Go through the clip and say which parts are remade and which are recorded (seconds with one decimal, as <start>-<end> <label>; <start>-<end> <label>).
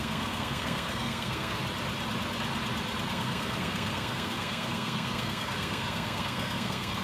0.0-1.6 remade; 1.6-3.1 recorded; 3.1-7.0 remade